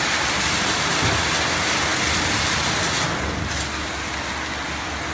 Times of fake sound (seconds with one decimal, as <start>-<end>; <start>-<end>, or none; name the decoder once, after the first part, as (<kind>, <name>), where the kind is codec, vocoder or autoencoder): none